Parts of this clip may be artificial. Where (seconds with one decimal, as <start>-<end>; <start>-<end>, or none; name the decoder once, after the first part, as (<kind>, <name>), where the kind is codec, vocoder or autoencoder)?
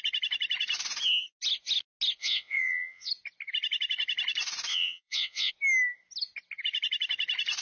2.2-3.1 (vocoder, WaveNeXt); 4.7-5.5